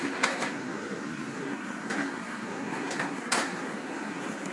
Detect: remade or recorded remade